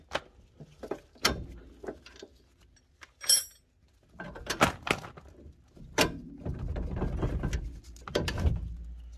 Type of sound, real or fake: real